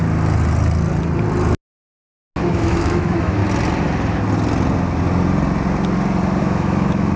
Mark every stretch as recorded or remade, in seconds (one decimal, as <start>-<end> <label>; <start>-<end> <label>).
0.0-2.5 recorded; 2.5-3.4 remade; 3.4-6.4 recorded; 6.4-7.2 remade